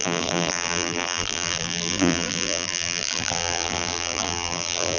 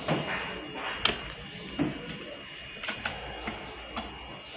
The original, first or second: second